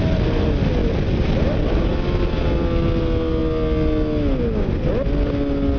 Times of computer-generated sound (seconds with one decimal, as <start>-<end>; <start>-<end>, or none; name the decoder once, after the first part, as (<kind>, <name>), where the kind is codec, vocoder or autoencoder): none